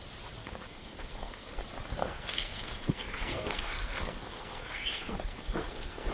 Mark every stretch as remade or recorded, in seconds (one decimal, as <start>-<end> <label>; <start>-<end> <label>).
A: 0.0-0.4 recorded; 0.4-1.6 remade; 1.6-2.0 recorded; 2.0-6.1 remade